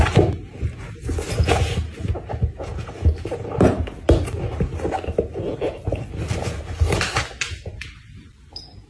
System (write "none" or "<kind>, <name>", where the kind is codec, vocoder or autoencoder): none